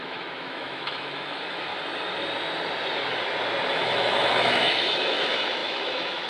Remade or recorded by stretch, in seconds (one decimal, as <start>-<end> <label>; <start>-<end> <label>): 0.0-1.7 remade; 1.7-3.7 recorded; 3.7-6.3 remade